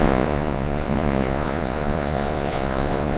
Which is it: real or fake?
fake